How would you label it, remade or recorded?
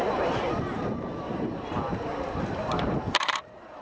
remade